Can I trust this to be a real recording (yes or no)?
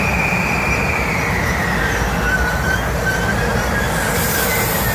yes